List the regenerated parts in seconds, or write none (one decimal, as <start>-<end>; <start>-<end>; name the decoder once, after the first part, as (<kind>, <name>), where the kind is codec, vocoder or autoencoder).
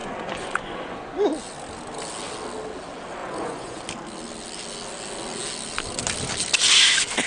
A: 0.0-1.3 (vocoder, Vocos); 3.2-3.8